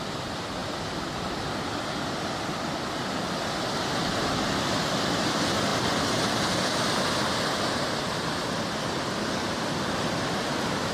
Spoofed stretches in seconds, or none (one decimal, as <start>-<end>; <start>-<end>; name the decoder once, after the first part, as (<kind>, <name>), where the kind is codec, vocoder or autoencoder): none